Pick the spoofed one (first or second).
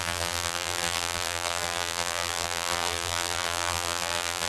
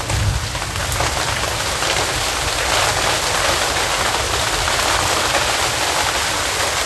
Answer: first